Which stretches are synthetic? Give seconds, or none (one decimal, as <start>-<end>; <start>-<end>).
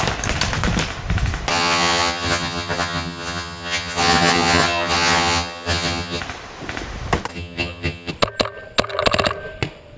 1.5-6.2; 7.3-8.1